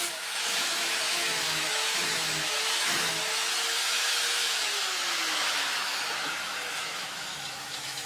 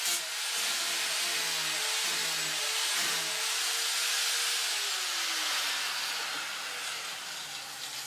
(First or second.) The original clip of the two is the second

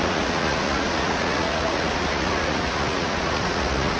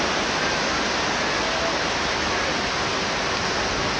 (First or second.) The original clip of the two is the second